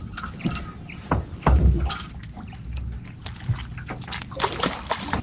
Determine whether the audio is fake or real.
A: real